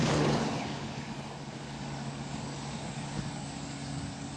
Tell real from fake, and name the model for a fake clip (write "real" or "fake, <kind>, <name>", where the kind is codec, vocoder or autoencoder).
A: fake, codec, DAC